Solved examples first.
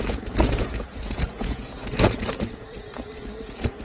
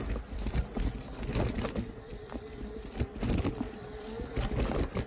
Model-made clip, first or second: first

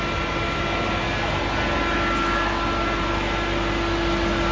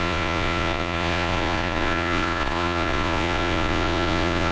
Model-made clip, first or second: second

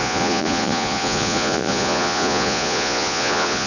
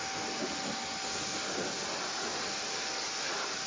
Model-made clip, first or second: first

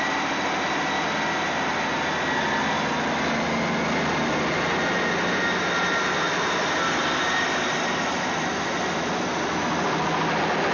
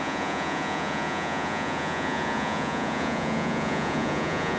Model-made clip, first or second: second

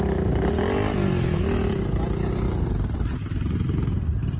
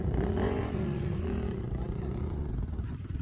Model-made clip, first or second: second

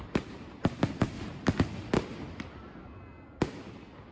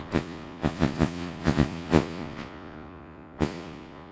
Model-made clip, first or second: second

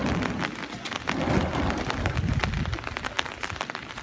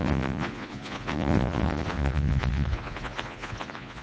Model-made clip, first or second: second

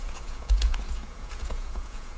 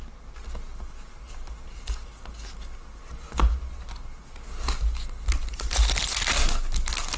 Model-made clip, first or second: first